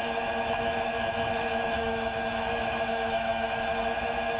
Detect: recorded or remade remade